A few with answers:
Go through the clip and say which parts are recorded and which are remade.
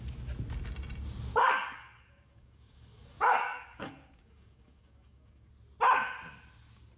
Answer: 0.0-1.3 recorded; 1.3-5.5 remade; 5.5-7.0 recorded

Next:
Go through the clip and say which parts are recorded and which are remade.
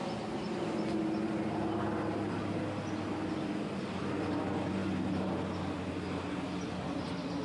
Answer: 0.0-7.4 recorded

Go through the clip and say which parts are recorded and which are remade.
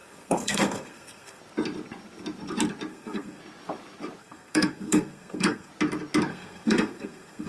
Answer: 0.0-1.4 remade; 1.4-2.9 recorded; 2.9-3.4 remade; 3.4-4.2 recorded; 4.2-5.7 remade; 5.7-6.3 recorded; 6.3-7.5 remade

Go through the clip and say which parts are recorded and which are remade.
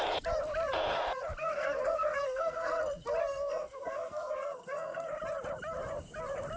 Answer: 0.0-1.4 recorded; 1.4-2.8 remade; 2.8-3.2 recorded; 3.2-5.1 remade; 5.1-6.6 recorded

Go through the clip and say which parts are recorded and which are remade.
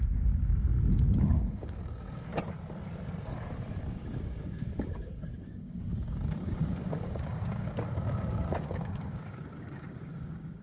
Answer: 0.0-0.7 remade; 0.7-1.2 recorded; 1.2-2.3 remade; 2.3-3.8 recorded; 3.8-10.6 remade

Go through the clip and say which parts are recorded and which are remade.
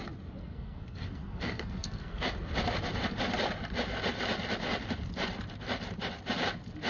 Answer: 0.0-0.4 recorded; 0.4-2.2 remade; 2.2-6.9 recorded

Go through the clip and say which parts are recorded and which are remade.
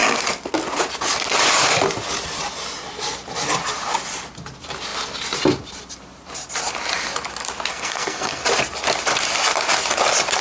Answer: 0.0-7.7 recorded; 7.7-8.4 remade; 8.4-10.4 recorded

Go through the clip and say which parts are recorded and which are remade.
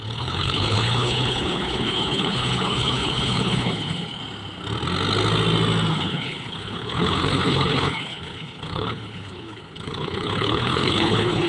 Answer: 0.0-4.2 remade; 4.2-5.9 recorded; 5.9-11.5 remade